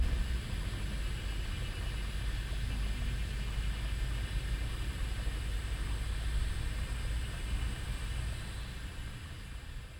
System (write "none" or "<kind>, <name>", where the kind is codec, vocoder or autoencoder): none